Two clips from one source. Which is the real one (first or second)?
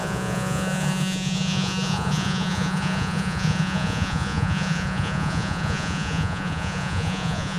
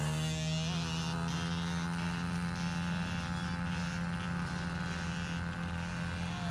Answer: second